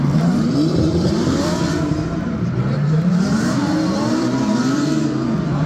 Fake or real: fake